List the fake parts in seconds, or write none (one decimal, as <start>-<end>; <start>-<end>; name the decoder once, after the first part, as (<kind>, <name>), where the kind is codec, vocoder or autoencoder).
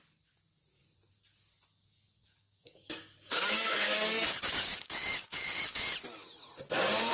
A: 1.9-5.9 (codec, DAC)